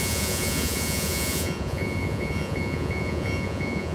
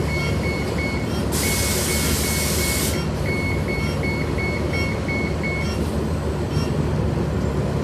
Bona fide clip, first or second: second